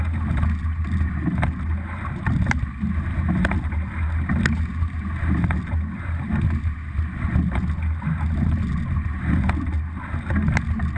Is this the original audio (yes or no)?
yes